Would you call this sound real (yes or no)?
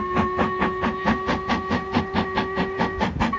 yes